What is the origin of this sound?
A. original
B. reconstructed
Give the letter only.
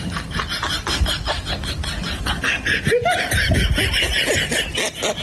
A